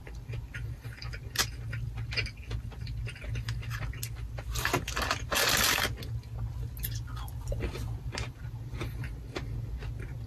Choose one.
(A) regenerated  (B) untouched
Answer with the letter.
B